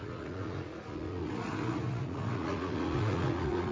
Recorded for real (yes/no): no